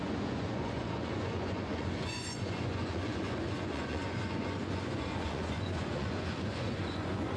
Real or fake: fake